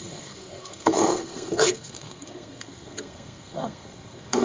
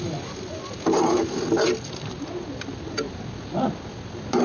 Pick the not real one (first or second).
first